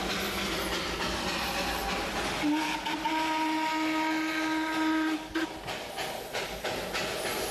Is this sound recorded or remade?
recorded